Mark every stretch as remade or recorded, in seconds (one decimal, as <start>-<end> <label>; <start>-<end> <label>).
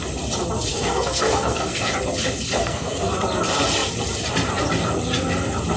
0.0-0.7 recorded; 0.7-1.9 remade; 1.9-2.6 recorded; 2.6-3.1 remade; 3.1-5.8 recorded